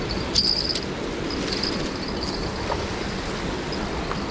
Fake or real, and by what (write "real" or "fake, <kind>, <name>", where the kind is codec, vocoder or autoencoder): real